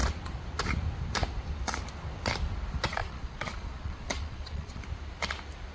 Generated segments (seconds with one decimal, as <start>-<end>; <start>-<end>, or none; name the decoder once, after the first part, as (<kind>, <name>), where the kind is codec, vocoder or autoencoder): 3.0-4.8 (vocoder, Vocos)